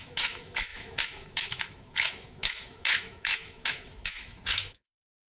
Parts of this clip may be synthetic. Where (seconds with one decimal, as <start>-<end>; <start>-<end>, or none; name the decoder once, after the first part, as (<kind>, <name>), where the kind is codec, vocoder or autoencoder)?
0.0-5.3 (autoencoder, DAC-VAE)